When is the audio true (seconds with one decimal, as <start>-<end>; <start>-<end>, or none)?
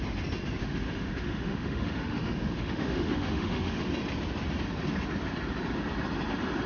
0.0-0.6; 3.8-6.7